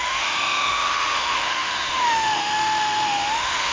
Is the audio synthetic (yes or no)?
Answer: yes